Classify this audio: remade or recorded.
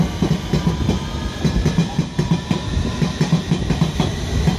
recorded